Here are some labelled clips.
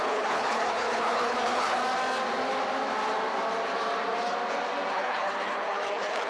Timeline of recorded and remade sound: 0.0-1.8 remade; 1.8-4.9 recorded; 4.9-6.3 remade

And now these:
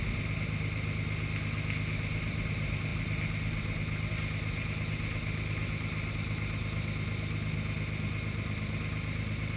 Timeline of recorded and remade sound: 0.0-9.6 recorded

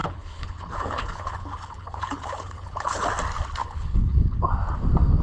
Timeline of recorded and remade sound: 0.0-3.1 remade; 3.1-3.6 recorded; 3.6-4.4 remade; 4.4-5.2 recorded

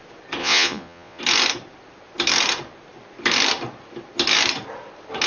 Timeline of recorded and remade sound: 0.0-0.4 recorded; 0.4-1.2 remade; 1.2-5.3 recorded

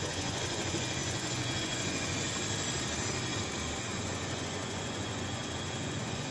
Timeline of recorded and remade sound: 0.0-2.4 remade; 2.4-3.8 recorded; 3.8-6.3 remade

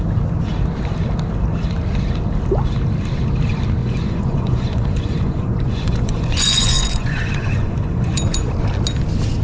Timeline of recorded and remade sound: 0.0-3.8 recorded; 3.8-8.5 remade; 8.5-9.4 recorded

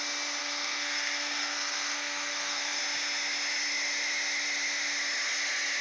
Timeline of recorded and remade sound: 0.0-0.4 recorded; 0.4-2.8 remade; 2.8-5.8 recorded

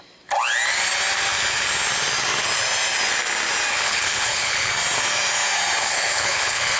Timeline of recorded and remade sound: 0.0-3.7 recorded; 3.7-4.7 remade; 4.7-5.8 recorded; 5.8-6.8 remade